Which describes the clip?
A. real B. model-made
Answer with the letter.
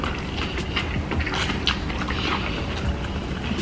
A